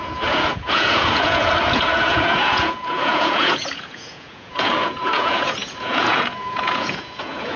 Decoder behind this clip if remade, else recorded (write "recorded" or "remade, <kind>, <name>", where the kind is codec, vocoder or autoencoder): remade, vocoder, Vocos